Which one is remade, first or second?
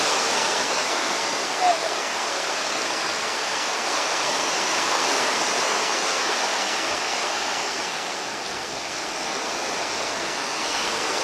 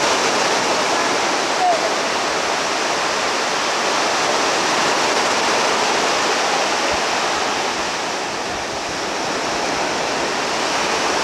first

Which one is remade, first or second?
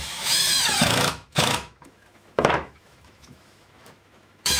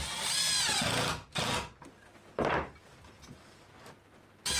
first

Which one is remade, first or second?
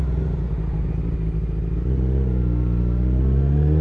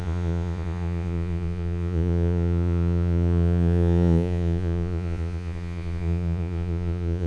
second